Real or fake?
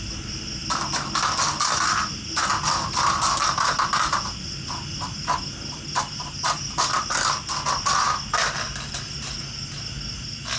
real